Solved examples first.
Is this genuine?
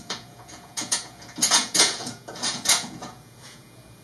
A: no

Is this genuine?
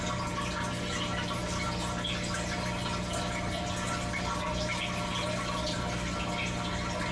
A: yes